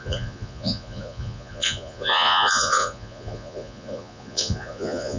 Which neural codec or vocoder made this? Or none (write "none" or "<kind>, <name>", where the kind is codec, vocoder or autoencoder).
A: vocoder, Vocos